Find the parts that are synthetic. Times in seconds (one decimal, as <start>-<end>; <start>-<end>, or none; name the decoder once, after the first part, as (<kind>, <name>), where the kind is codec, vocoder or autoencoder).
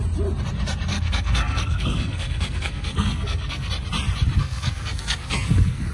0.9-3.7 (codec, SNAC); 4.4-5.9